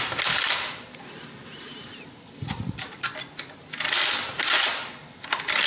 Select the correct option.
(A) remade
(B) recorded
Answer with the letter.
B